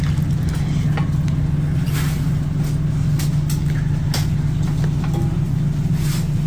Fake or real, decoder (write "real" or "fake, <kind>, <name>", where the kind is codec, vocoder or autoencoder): real